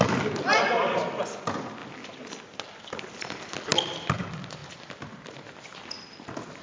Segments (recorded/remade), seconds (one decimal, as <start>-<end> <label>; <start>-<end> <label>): 0.0-6.6 recorded

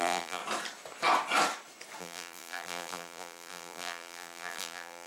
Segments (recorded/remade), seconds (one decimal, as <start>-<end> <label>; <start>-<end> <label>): 0.0-0.4 remade; 0.4-2.0 recorded; 2.0-5.1 remade

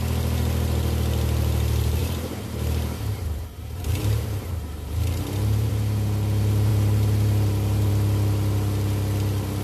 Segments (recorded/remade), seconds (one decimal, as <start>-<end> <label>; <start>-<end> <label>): 0.0-2.0 recorded; 2.0-5.7 remade; 5.7-6.7 recorded; 6.7-7.9 remade; 7.9-9.6 recorded

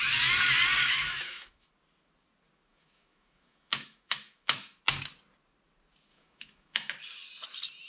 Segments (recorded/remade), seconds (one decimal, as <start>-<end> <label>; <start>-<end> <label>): 0.0-0.8 recorded; 0.8-1.7 remade; 1.7-2.7 recorded; 2.7-4.8 remade; 4.8-6.1 recorded; 6.1-6.9 remade; 6.9-7.9 recorded

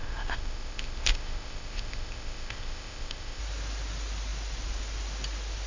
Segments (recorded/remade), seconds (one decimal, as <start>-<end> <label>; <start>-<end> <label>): 0.0-3.4 remade; 3.4-5.7 recorded

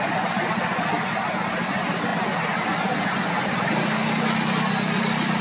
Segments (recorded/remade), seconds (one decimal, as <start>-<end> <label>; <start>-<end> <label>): 0.0-5.4 recorded

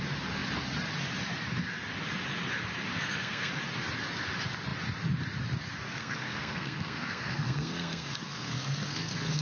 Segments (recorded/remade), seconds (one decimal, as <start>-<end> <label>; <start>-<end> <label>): 0.0-2.9 recorded; 2.9-3.5 remade; 3.5-6.0 recorded; 6.0-9.4 remade

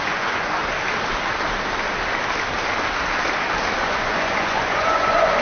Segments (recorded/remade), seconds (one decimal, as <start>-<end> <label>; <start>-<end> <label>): 0.0-0.6 remade; 0.6-3.8 recorded; 3.8-5.4 remade